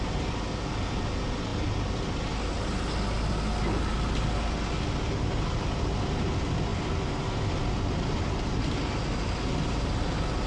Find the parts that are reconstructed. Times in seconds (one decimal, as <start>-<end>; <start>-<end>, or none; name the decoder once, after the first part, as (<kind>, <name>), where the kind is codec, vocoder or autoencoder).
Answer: none